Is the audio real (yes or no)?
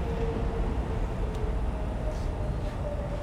yes